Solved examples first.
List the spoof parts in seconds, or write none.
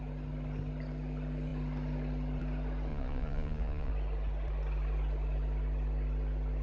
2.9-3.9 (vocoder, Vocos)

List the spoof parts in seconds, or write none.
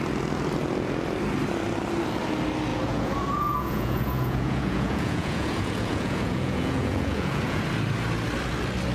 2.7-7.6 (vocoder, Vocos)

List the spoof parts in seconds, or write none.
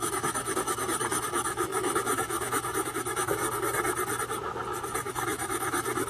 0.0-3.4 (autoencoder, DAC-VAE); 5.1-6.1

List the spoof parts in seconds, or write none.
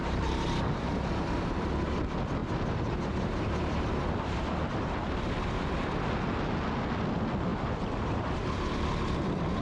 0.0-1.7 (vocoder, BigVGAN v2); 2.4-3.8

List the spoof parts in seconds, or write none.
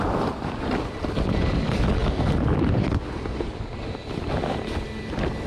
none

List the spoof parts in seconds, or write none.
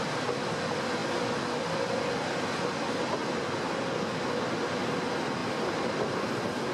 none